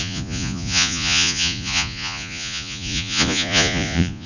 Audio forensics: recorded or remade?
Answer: remade